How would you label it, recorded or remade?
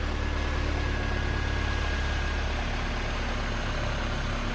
recorded